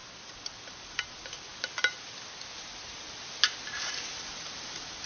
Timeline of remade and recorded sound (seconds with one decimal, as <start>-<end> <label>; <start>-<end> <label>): 0.0-0.8 recorded; 0.8-1.5 remade; 1.5-4.1 recorded; 4.1-5.1 remade